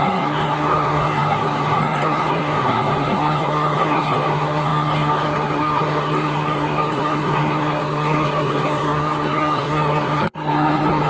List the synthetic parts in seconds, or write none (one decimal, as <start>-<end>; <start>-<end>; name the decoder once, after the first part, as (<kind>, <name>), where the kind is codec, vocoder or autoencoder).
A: 0.0-11.1 (codec, SNAC)